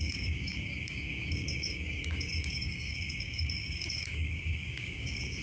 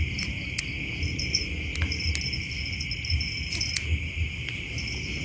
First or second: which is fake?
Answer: first